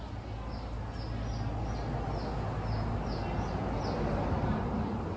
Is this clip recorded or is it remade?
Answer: recorded